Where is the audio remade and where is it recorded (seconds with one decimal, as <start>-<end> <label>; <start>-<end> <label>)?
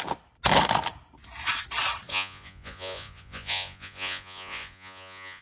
0.0-2.1 recorded; 2.1-5.4 remade